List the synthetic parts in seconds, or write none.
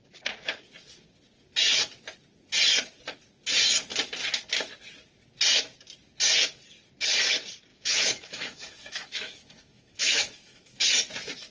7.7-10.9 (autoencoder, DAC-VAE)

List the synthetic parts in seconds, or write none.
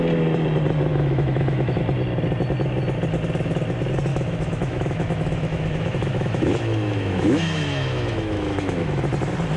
0.9-1.8 (autoencoder, DAC-VAE); 4.1-9.0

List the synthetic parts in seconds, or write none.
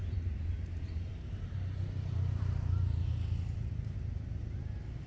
0.0-3.1 (vocoder, BigVGAN v2); 4.4-5.1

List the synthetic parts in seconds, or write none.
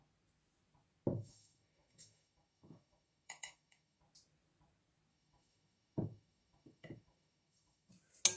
1.1-4.0 (autoencoder, DAC-VAE); 5.1-7.9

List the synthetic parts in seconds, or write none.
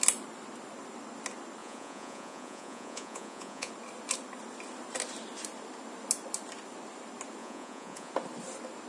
1.6-3.7 (vocoder, Vocos); 7.4-8.1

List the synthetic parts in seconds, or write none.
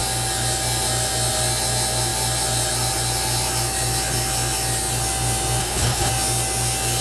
5.6-6.1 (codec, HILCodec)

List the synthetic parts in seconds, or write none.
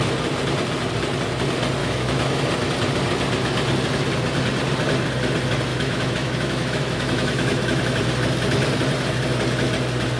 1.8-2.4 (autoencoder, DAC-VAE); 5.7-7.8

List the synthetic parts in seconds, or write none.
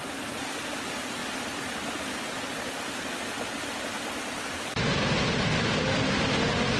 none